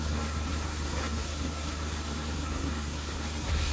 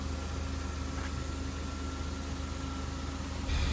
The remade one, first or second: first